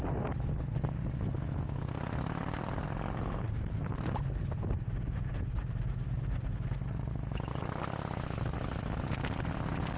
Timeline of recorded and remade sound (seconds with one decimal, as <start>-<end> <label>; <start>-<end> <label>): 0.0-2.4 recorded; 2.4-7.2 remade; 7.2-10.0 recorded